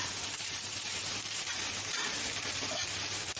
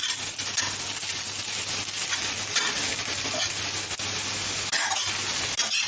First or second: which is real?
second